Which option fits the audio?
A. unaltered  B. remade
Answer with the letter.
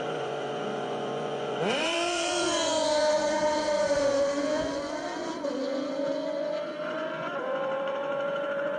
B